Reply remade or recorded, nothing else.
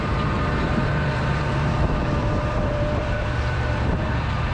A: remade